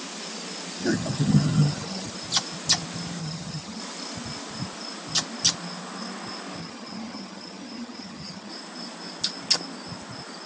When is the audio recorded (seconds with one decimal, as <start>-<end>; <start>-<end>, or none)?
0.0-0.8; 2.1-3.2; 3.8-6.6; 8.5-10.5